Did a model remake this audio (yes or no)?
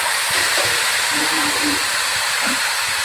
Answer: yes